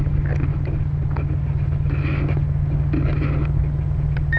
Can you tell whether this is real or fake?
real